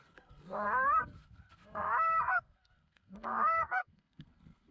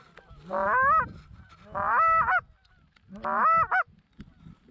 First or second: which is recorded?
second